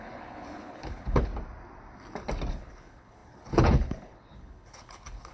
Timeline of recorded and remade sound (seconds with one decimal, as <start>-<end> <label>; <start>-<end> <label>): 0.0-1.3 remade; 1.3-2.5 recorded; 2.5-5.3 remade